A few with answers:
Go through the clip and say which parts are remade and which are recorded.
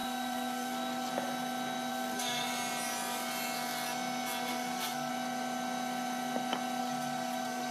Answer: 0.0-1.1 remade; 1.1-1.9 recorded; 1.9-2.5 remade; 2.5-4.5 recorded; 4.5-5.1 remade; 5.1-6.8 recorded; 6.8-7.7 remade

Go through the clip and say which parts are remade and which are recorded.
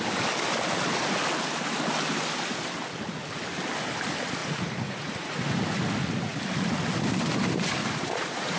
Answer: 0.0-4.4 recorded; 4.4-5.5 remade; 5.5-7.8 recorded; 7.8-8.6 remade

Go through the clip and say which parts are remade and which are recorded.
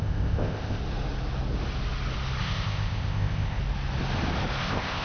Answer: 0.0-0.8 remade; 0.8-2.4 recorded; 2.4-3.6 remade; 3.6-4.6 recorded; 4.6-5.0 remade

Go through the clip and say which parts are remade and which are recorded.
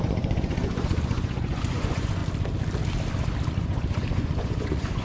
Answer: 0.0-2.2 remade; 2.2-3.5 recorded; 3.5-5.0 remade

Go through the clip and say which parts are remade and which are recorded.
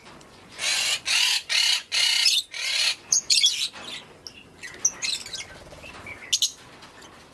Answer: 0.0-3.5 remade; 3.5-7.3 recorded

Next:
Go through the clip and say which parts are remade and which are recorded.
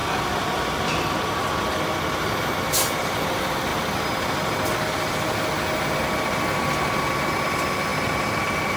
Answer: 0.0-8.8 recorded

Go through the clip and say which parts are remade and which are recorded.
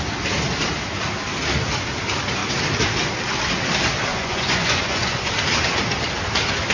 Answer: 0.0-4.1 recorded; 4.1-5.3 remade; 5.3-6.7 recorded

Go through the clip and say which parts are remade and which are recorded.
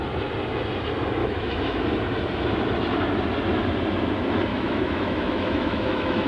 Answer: 0.0-1.2 recorded; 1.2-1.8 remade; 1.8-4.5 recorded; 4.5-6.3 remade